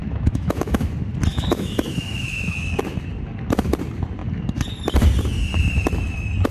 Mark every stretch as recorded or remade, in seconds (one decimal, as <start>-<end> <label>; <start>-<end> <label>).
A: 0.0-0.9 remade; 0.9-1.3 recorded; 1.3-2.8 remade; 2.8-6.5 recorded